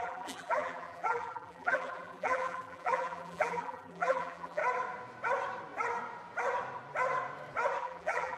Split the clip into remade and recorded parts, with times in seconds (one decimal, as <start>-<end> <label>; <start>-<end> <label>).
0.0-4.6 remade; 4.6-7.8 recorded; 7.8-8.4 remade